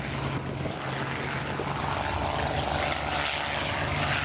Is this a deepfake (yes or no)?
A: no